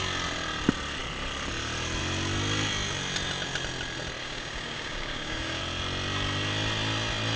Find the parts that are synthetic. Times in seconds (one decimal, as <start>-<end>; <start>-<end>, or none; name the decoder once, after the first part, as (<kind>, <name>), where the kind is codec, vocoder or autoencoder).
4.2-5.6 (codec, DAC)